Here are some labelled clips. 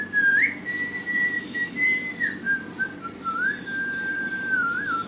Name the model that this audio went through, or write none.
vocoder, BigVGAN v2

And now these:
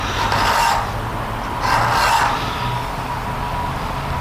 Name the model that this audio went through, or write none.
none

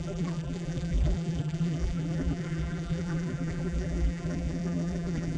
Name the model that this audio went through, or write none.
vocoder, BigVGAN v2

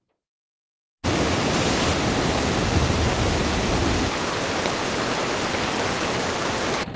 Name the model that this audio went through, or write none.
none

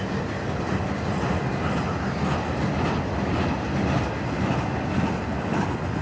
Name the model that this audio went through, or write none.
none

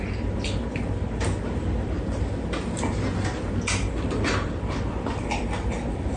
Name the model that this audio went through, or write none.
none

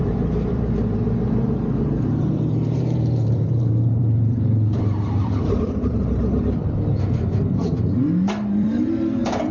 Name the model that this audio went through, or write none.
vocoder, BigVGAN v2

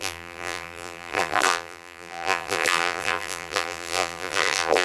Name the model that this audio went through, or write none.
vocoder, BigVGAN v2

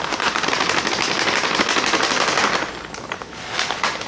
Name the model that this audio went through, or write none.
none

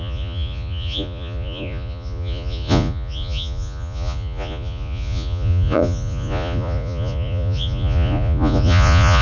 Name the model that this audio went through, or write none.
vocoder, Vocos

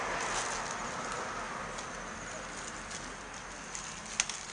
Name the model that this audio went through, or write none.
none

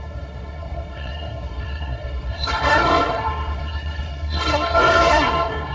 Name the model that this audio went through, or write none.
codec, SNAC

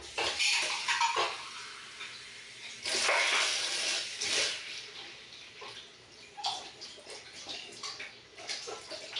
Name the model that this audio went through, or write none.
none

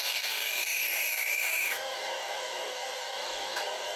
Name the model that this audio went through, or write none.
codec, DAC